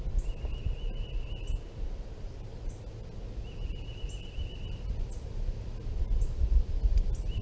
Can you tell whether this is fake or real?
real